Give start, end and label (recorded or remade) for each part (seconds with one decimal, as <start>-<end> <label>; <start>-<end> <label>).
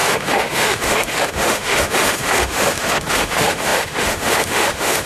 0.0-5.1 remade